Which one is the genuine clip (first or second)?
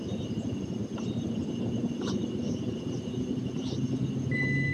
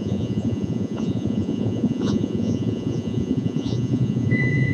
first